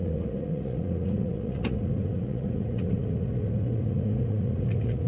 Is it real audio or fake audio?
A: fake